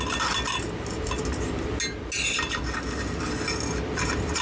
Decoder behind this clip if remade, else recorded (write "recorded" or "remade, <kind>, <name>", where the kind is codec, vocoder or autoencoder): recorded